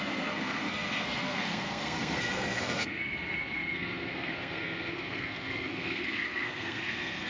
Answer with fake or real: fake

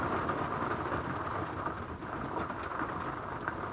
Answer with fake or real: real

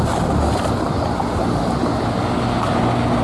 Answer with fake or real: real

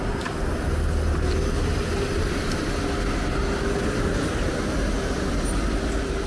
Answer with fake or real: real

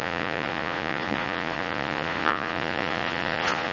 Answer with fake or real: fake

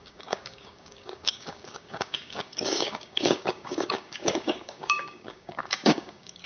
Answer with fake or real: fake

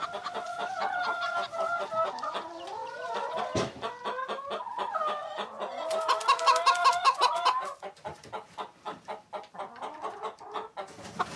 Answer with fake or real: real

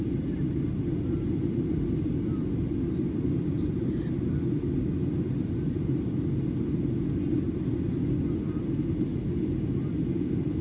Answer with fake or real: real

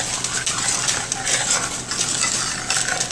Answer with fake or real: real